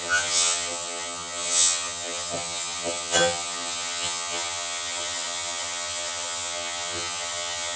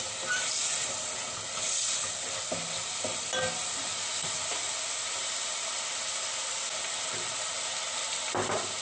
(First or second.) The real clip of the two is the second